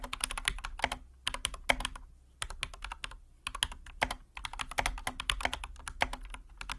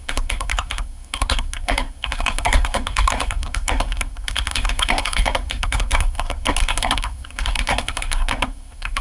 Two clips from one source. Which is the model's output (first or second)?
second